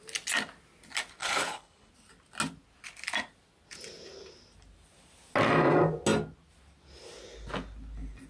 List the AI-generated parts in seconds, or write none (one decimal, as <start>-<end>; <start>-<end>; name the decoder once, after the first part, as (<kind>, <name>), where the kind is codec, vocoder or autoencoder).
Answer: 1.2-1.9 (codec, HILCodec)